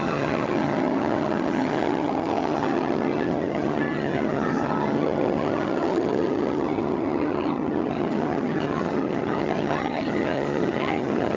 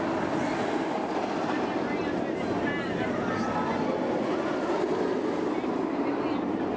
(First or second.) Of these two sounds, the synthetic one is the first